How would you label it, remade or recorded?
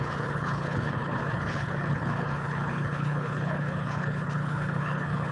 remade